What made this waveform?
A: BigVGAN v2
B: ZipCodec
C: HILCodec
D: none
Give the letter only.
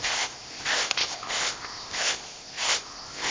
B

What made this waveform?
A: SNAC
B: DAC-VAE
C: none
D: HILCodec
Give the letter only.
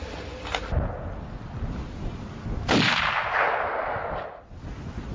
C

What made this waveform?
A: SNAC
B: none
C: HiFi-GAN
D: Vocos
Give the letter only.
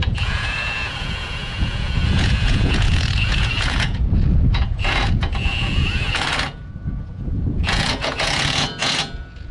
D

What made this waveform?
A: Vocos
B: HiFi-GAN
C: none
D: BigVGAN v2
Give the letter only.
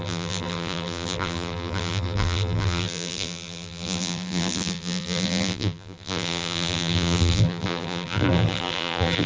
D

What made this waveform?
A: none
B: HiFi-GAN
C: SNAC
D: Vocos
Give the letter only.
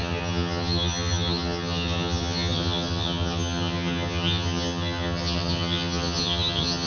B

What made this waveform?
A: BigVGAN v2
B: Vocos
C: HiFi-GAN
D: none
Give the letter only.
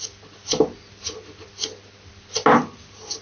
D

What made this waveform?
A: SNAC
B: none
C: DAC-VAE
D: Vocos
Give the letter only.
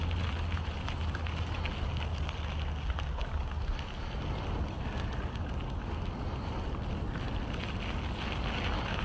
B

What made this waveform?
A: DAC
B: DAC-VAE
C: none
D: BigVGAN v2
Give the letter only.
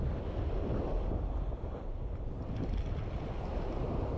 C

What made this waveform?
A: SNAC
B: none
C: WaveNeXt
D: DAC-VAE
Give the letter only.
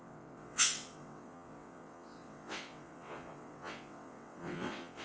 C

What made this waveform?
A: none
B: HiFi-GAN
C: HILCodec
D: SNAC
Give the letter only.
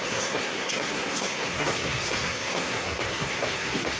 D